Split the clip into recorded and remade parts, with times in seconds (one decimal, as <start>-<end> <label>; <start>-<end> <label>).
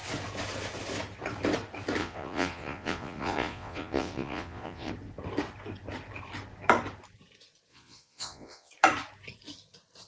0.0-2.0 recorded; 2.0-4.9 remade; 4.9-7.7 recorded; 7.7-8.7 remade; 8.7-10.1 recorded